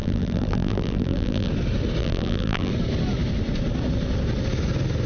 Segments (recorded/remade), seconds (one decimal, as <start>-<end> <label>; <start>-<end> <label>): 0.0-1.5 remade; 1.5-2.0 recorded; 2.0-2.7 remade; 2.7-5.1 recorded